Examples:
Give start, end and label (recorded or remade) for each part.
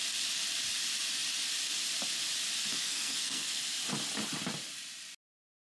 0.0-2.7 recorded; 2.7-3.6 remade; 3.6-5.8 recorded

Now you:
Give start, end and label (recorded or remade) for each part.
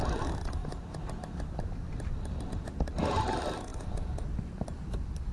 0.0-5.3 recorded